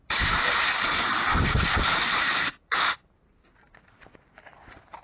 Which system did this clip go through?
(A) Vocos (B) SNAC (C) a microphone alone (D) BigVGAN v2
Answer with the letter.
D